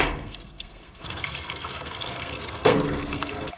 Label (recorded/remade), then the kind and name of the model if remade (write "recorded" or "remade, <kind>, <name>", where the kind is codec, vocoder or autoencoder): remade, codec, SNAC